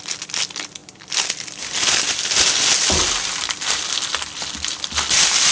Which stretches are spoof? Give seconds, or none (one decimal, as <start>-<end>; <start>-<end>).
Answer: none